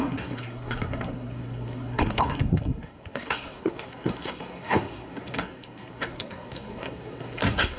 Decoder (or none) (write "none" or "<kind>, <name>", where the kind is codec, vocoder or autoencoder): codec, SNAC